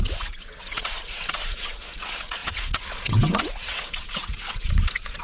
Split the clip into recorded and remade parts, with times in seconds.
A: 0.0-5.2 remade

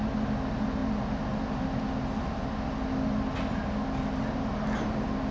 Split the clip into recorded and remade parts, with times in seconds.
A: 0.0-5.3 recorded